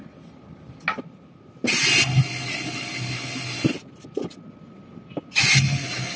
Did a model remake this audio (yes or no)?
no